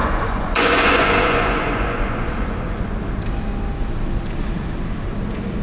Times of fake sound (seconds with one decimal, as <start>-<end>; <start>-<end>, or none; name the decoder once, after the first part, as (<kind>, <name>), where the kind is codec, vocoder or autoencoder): 0.0-3.0 (vocoder, Vocos)